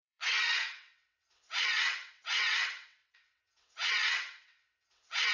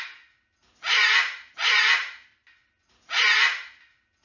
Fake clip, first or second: first